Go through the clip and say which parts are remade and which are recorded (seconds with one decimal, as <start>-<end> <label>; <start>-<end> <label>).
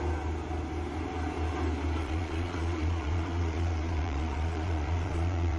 0.0-2.0 recorded; 2.0-5.6 remade